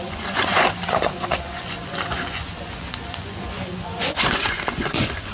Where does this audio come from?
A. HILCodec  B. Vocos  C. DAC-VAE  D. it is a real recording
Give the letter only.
B